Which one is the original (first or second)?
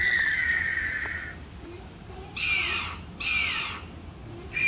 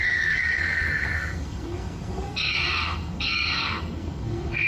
first